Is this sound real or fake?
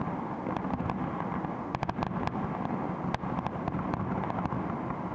real